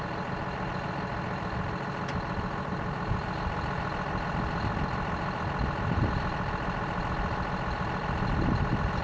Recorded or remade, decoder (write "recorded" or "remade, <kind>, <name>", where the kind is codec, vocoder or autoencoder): recorded